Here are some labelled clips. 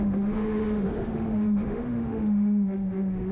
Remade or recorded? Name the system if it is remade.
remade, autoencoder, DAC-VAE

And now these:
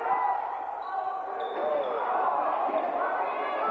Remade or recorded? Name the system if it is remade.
recorded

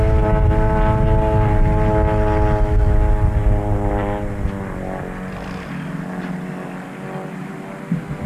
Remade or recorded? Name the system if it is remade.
recorded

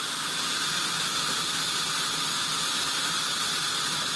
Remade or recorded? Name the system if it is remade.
recorded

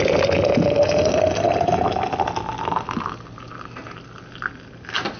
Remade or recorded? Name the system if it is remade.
recorded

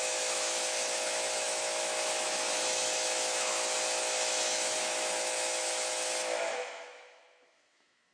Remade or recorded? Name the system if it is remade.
remade, autoencoder, DAC-VAE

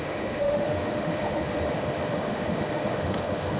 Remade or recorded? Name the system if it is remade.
remade, autoencoder, DAC-VAE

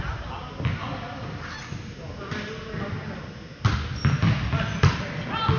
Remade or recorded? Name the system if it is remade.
recorded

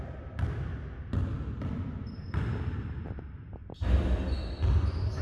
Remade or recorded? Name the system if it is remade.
recorded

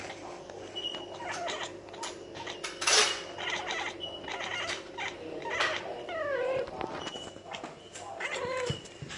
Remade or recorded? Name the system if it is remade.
recorded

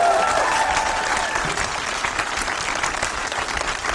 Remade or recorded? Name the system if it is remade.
recorded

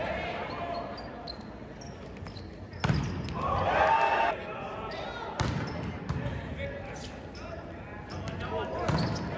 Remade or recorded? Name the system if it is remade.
recorded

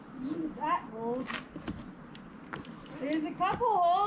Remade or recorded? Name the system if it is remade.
recorded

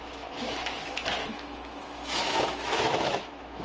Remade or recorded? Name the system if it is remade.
remade, autoencoder, DAC-VAE